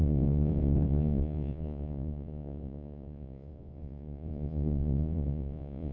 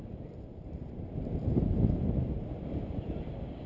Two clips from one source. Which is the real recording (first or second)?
second